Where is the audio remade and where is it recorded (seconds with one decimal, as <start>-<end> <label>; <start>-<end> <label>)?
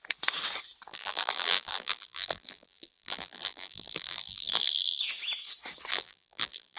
0.0-0.9 recorded; 0.9-5.0 remade; 5.0-5.9 recorded; 5.9-6.8 remade